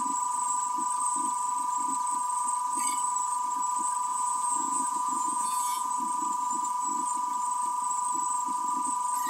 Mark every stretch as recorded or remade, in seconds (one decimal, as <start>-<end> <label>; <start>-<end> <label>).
0.0-4.1 recorded; 4.1-5.9 remade; 5.9-9.3 recorded